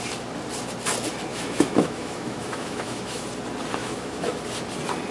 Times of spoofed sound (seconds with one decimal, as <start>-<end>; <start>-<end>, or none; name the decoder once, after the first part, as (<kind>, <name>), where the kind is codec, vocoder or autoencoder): 1.3-3.2 (autoencoder, DAC-VAE); 3.8-4.4